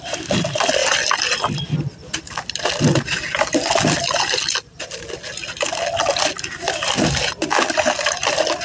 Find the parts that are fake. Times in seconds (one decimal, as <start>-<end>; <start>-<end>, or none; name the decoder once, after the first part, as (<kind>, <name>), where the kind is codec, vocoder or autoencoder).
none